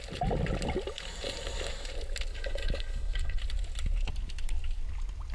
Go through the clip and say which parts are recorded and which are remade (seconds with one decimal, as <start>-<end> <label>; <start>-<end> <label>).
0.0-2.3 recorded; 2.3-3.4 remade; 3.4-5.3 recorded